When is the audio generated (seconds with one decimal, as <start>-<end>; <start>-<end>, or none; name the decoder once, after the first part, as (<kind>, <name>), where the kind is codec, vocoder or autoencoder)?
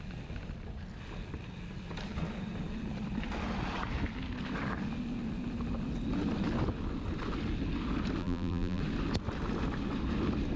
8.2-8.8 (vocoder, BigVGAN v2)